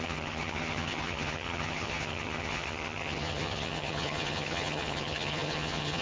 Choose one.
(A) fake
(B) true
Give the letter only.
A